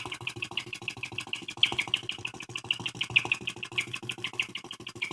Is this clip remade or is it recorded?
recorded